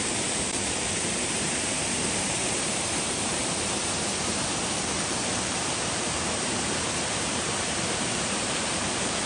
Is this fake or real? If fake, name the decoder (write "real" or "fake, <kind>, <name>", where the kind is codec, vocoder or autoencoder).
fake, vocoder, BigVGAN v2